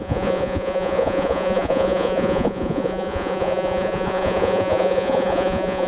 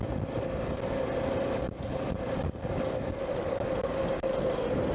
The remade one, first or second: first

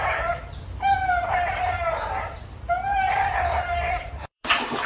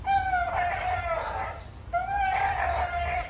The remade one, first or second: first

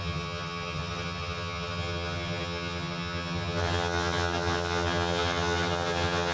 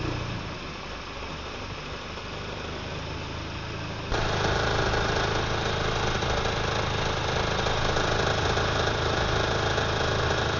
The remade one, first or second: first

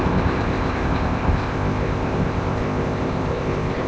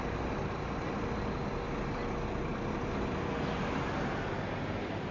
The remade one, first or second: first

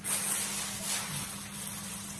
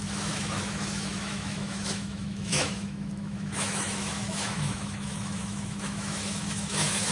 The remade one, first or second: second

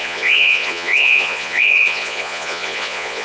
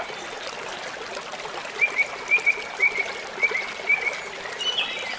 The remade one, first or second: first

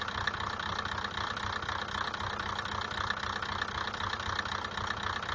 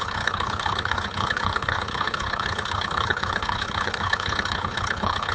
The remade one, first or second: second